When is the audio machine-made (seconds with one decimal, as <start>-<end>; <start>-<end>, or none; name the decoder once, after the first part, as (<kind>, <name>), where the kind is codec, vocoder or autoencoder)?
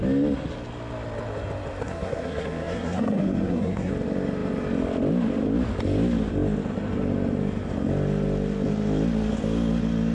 1.8-3.9 (codec, SNAC)